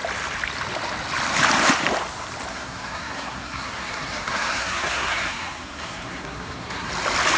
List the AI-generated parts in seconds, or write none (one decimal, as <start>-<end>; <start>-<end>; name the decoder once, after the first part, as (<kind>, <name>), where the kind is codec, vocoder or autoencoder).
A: 2.5-6.9 (codec, SNAC)